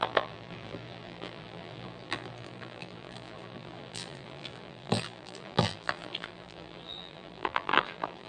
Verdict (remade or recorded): remade